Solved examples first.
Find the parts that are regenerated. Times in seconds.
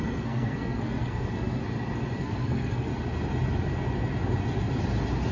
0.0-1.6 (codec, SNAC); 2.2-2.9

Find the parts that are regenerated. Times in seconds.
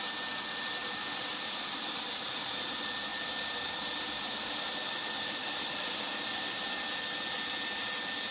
0.8-2.4 (vocoder, BigVGAN v2); 3.1-4.9; 5.4-6.6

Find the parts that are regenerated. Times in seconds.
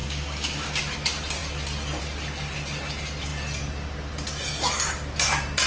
0.0-0.8 (codec, DAC)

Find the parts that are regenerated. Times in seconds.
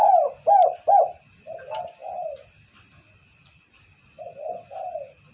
none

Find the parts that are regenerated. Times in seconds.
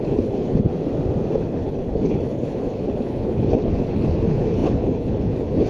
0.0-0.7 (codec, HILCodec); 1.4-5.7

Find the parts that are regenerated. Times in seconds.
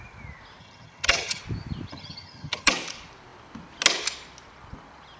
0.6-1.4 (vocoder, HiFi-GAN); 1.9-2.7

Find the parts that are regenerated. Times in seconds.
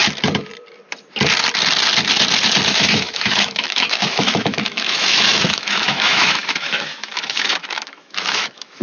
2.7-8.8 (autoencoder, DAC-VAE)